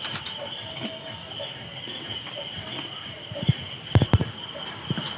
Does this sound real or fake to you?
real